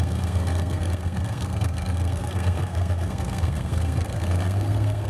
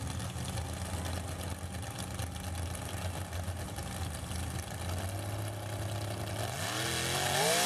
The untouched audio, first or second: second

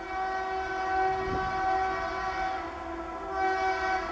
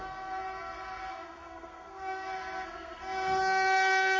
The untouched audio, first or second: first